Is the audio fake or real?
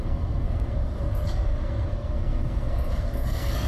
fake